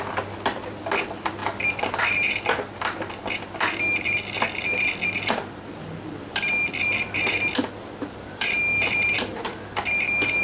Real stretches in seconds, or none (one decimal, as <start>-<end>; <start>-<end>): 0.0-10.4